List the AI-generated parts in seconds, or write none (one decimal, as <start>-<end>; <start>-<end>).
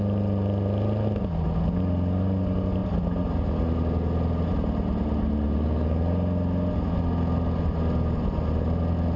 none